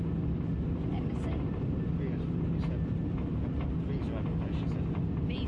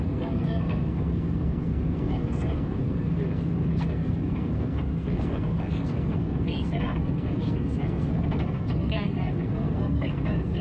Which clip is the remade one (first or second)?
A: second